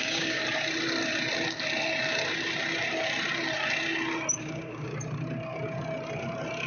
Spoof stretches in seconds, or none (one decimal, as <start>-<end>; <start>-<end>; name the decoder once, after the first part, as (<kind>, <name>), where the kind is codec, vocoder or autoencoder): 0.0-0.4 (codec, DAC); 4.4-4.9